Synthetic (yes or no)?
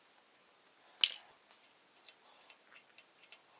no